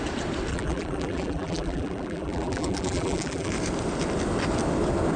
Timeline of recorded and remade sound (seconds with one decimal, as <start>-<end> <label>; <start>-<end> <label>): 0.0-0.5 recorded; 0.5-3.5 remade; 3.5-5.2 recorded